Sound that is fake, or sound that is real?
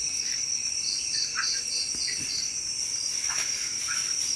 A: real